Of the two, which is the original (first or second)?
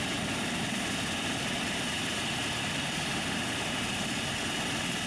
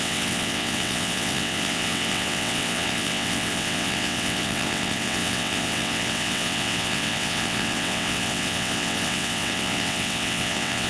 first